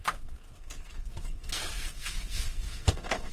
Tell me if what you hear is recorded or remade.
remade